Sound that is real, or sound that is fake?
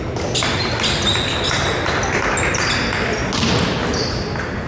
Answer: real